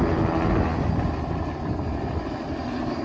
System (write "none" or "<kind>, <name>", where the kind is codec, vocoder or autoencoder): none